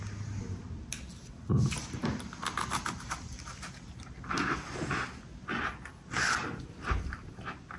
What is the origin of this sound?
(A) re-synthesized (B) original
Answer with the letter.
B